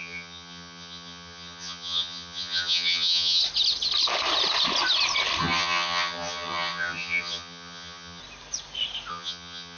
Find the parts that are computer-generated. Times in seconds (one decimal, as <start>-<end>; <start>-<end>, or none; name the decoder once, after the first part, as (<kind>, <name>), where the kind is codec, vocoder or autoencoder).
0.0-3.4 (vocoder, HiFi-GAN); 5.4-8.2; 9.1-9.8